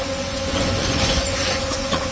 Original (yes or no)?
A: no